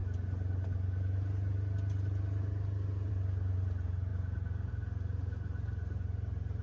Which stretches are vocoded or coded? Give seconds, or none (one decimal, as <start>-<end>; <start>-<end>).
none